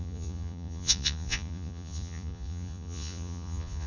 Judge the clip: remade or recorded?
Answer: remade